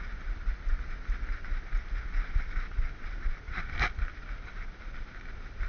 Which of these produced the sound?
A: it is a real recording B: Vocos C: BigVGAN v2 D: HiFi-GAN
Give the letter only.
A